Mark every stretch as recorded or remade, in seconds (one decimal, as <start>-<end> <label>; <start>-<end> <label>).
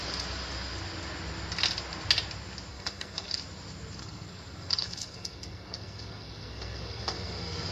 0.0-2.7 recorded; 2.7-3.4 remade; 3.4-4.0 recorded; 4.0-7.7 remade